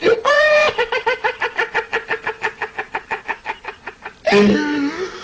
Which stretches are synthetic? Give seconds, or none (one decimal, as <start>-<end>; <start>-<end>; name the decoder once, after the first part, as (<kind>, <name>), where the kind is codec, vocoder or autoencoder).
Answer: 0.0-0.9 (vocoder, Vocos)